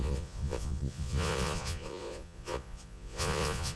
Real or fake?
fake